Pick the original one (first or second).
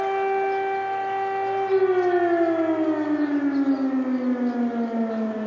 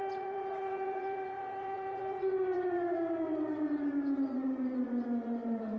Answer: first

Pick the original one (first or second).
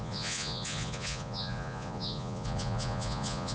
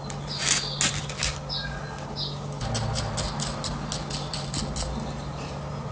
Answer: second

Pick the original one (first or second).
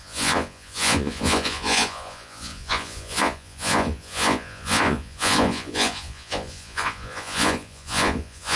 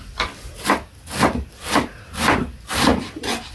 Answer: second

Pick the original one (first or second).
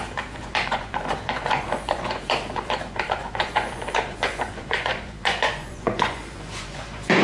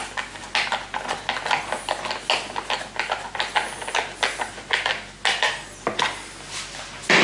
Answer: second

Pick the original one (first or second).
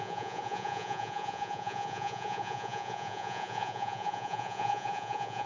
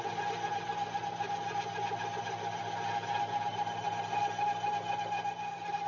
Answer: second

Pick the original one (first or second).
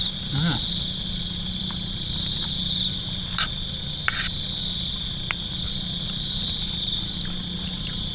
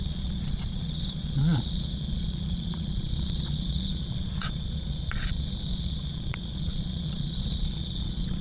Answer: first